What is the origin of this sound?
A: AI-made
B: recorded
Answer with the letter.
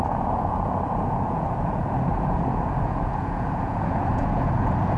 A